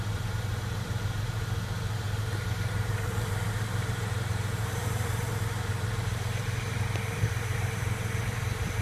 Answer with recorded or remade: remade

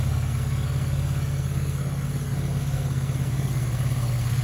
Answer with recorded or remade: remade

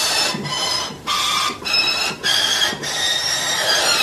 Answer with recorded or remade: recorded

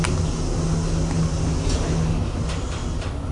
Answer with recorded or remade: recorded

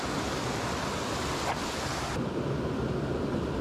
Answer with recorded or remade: recorded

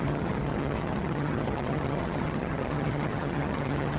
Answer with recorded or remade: remade